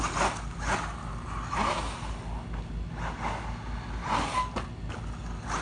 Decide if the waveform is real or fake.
real